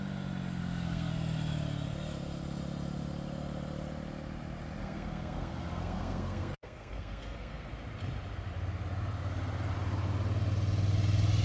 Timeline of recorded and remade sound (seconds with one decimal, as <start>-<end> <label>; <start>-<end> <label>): 0.0-0.6 recorded; 0.6-1.1 remade; 1.1-4.8 recorded; 4.8-7.7 remade; 7.7-11.4 recorded